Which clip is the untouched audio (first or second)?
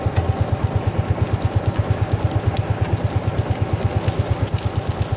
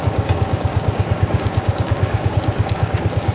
first